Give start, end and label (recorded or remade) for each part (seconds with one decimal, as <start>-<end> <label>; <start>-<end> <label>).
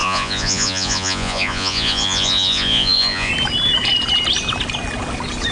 0.0-3.3 remade; 3.3-5.5 recorded